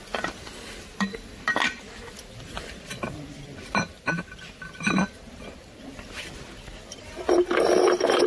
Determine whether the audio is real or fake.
real